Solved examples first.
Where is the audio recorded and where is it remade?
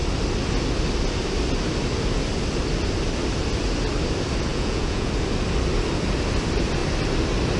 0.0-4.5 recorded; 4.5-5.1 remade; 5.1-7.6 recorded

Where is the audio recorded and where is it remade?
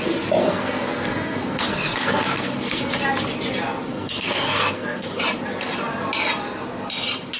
0.0-0.4 recorded; 0.4-2.9 remade; 2.9-3.9 recorded; 3.9-5.2 remade; 5.2-7.4 recorded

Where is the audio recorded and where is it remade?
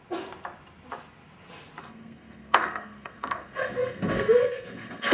0.0-1.8 recorded; 1.8-5.1 remade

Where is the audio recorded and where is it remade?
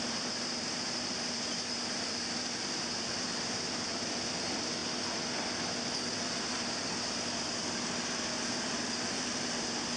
0.0-4.8 remade; 4.8-5.9 recorded; 5.9-10.0 remade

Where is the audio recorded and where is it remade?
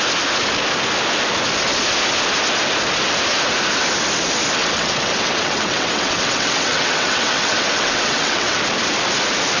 0.0-4.6 recorded; 4.6-8.6 remade; 8.6-9.6 recorded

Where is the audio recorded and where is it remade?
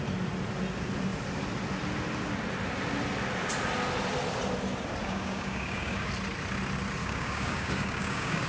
0.0-5.0 recorded; 5.0-6.1 remade; 6.1-7.0 recorded; 7.0-8.5 remade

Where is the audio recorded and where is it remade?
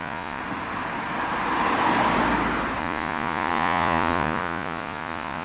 0.0-0.4 remade; 0.4-2.8 recorded; 2.8-5.4 remade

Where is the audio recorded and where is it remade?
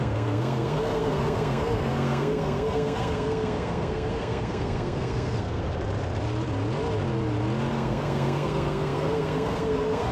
0.0-5.6 remade; 5.6-7.7 recorded; 7.7-10.1 remade